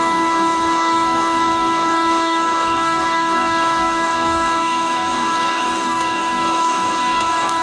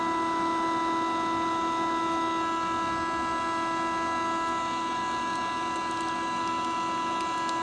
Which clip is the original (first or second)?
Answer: second